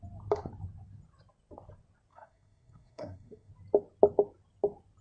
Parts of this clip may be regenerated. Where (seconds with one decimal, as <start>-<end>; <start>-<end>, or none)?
2.1-3.5